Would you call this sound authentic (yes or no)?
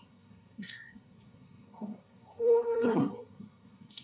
no